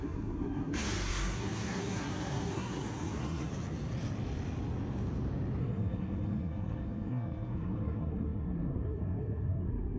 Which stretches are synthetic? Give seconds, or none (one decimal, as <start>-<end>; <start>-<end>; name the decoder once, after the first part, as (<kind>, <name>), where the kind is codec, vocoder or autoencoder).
0.0-3.5 (codec, SNAC); 5.6-10.0